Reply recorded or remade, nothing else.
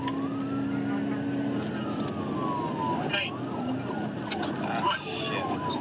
recorded